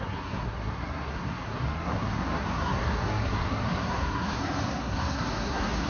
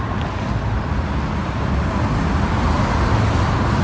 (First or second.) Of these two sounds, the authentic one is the second